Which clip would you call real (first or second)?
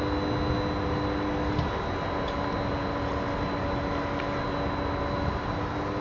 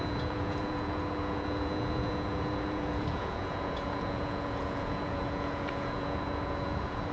first